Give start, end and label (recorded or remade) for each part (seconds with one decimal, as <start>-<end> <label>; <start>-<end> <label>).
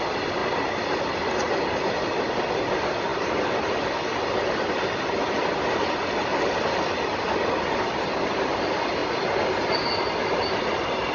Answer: 0.0-11.1 recorded